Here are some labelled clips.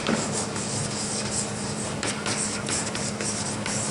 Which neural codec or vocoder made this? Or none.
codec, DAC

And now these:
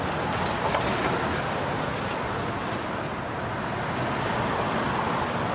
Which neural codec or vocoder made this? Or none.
none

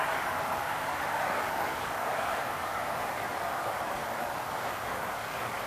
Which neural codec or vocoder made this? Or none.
codec, DAC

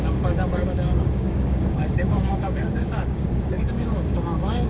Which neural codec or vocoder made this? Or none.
codec, DAC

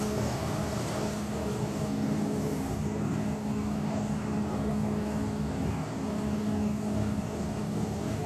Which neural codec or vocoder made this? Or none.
codec, DAC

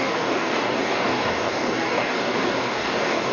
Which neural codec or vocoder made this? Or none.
codec, DAC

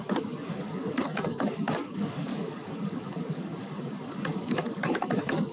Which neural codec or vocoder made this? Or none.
codec, DAC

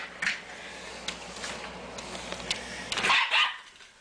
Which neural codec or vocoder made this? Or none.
none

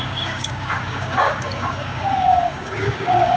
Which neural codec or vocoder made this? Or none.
codec, DAC